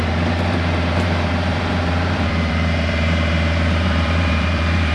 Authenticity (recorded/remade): remade